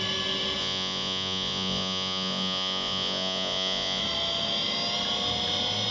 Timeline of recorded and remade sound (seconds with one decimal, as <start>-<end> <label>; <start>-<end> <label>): 0.0-0.6 recorded; 0.6-4.0 remade; 4.0-5.9 recorded